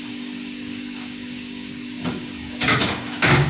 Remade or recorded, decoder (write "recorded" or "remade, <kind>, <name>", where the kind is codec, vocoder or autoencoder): remade, codec, DAC